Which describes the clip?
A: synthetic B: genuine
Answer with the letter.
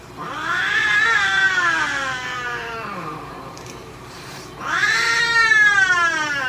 A